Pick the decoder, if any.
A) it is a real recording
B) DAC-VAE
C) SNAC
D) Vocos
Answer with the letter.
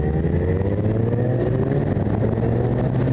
A